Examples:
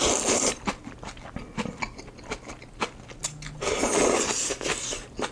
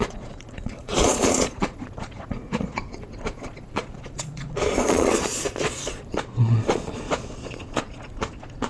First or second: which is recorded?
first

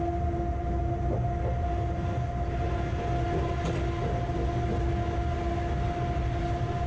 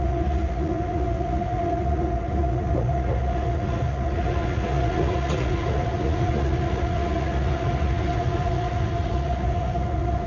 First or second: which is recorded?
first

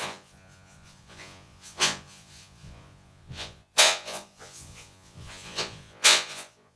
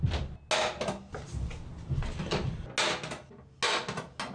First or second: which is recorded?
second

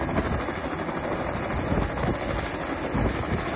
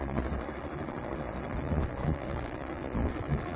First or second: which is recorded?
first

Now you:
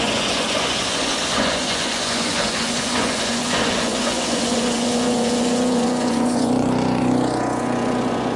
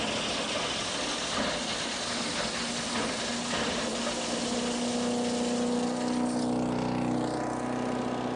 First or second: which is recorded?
second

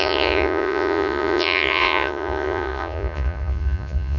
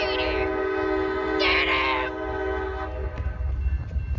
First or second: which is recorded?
second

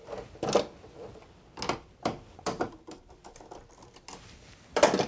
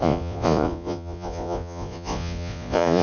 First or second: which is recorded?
first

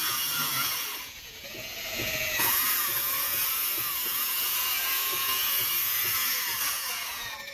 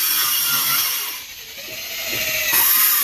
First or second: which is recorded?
second